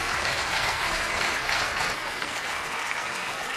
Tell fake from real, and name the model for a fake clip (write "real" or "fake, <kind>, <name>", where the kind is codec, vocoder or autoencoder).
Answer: fake, codec, SNAC